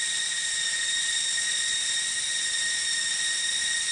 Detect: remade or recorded recorded